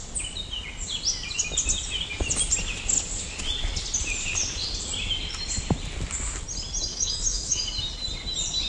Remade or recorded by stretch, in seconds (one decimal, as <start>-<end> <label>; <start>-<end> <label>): 0.0-6.9 recorded; 6.9-7.6 remade; 7.6-8.7 recorded